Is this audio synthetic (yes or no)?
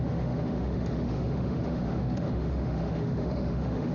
yes